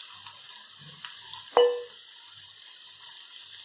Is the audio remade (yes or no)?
no